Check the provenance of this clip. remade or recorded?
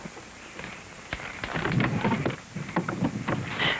recorded